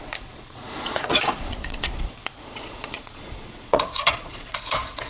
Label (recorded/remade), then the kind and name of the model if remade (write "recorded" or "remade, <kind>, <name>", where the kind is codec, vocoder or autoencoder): remade, vocoder, Vocos